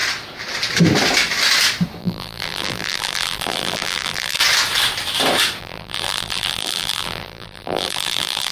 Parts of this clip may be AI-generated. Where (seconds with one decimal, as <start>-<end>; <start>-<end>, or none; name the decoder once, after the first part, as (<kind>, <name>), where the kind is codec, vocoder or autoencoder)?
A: 2.0-4.4 (vocoder, BigVGAN v2); 5.6-8.5